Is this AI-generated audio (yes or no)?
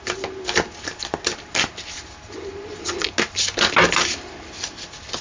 no